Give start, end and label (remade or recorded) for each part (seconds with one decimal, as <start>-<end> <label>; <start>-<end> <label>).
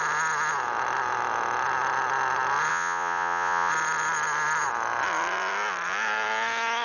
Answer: 0.0-2.7 recorded; 2.7-3.7 remade; 3.7-6.8 recorded